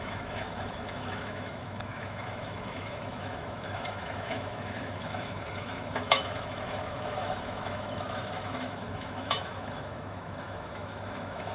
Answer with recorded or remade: remade